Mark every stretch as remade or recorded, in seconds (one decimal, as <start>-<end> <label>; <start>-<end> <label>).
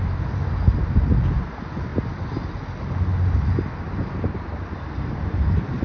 0.0-5.8 recorded